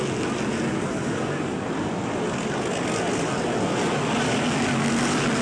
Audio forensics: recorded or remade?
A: recorded